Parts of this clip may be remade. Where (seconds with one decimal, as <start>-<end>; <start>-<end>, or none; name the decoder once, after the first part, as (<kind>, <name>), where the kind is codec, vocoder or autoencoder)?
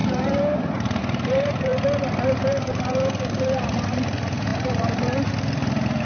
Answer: 0.0-1.7 (vocoder, BigVGAN v2); 2.3-6.0